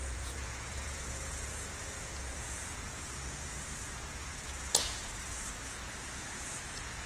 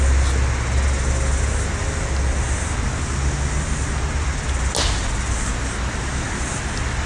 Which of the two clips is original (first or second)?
second